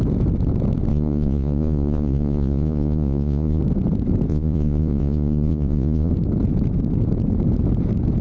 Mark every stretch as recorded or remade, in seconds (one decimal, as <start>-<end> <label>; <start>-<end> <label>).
0.0-0.9 recorded; 0.9-3.6 remade; 3.6-4.3 recorded; 4.3-6.1 remade; 6.1-8.2 recorded